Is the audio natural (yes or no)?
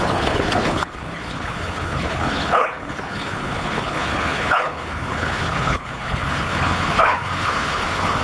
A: no